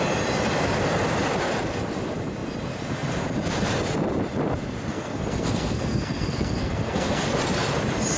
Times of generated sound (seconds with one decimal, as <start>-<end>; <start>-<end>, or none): 4.9-7.2